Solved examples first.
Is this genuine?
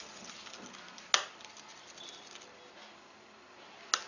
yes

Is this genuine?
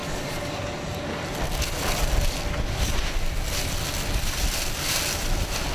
yes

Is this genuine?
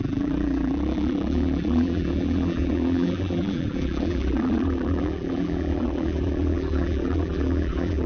no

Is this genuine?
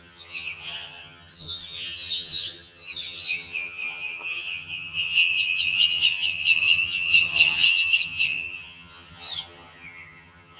no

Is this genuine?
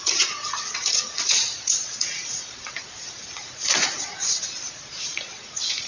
no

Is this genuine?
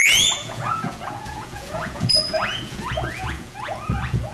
no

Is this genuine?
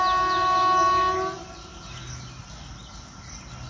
yes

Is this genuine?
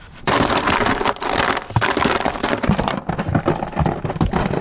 yes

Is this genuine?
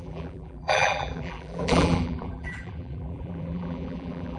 no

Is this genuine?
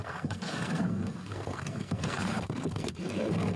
no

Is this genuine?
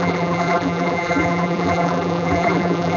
no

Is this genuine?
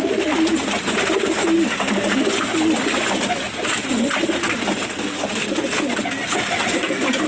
yes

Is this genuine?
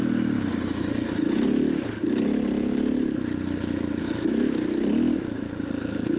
yes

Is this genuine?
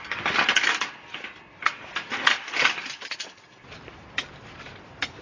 yes